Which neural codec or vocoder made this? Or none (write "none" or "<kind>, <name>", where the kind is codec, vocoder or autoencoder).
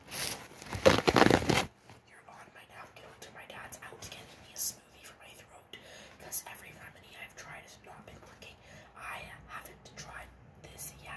none